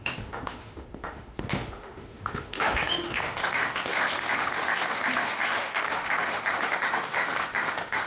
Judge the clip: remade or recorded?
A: remade